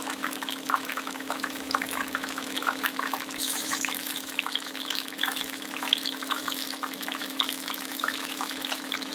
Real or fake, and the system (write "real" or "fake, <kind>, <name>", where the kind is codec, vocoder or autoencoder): fake, autoencoder, DAC-VAE